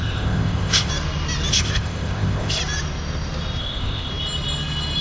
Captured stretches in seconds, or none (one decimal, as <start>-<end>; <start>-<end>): 0.9-1.5; 2.6-3.6; 4.1-5.0